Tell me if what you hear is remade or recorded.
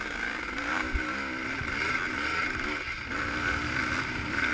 recorded